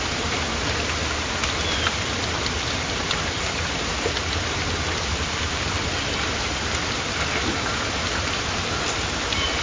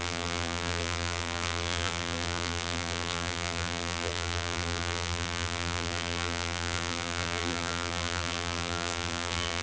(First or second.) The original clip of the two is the first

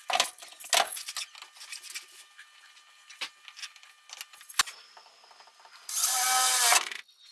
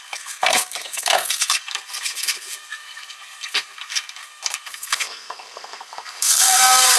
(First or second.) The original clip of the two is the first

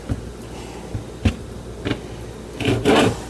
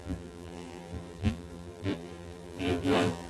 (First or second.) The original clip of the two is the first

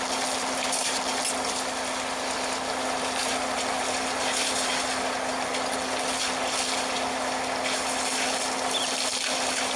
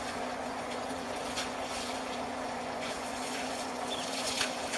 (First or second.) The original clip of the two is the first